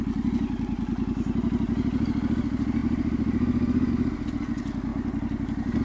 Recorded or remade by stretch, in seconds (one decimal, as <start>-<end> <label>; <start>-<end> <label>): 0.0-2.8 recorded; 2.8-3.9 remade; 3.9-4.9 recorded; 4.9-5.8 remade